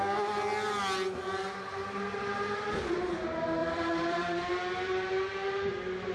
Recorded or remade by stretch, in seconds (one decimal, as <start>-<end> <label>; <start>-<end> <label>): 0.0-3.6 recorded; 3.6-4.5 remade; 4.5-6.1 recorded